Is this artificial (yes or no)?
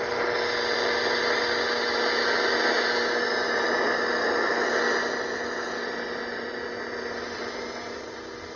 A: no